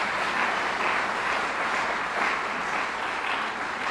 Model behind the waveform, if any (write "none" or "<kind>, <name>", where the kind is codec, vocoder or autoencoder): none